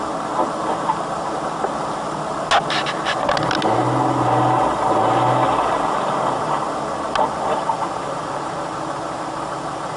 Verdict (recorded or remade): recorded